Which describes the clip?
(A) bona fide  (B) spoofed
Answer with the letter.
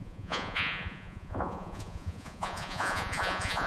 B